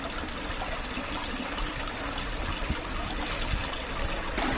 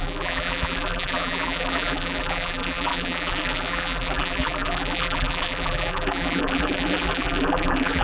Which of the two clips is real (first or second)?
first